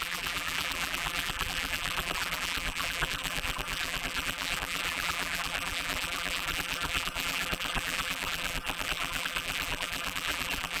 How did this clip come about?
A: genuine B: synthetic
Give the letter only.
B